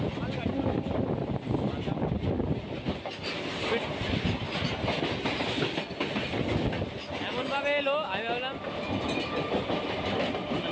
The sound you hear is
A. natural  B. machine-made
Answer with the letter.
A